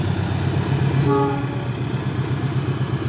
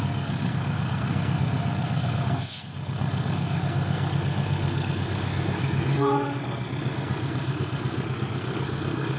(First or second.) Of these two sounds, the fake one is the second